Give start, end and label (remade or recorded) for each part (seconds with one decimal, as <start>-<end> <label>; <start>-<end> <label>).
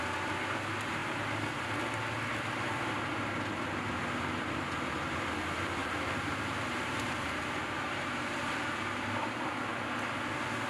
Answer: 0.0-5.8 recorded; 5.8-9.2 remade; 9.2-10.7 recorded